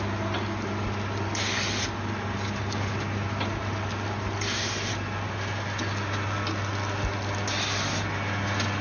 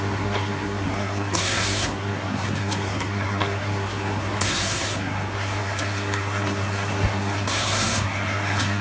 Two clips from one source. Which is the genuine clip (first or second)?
first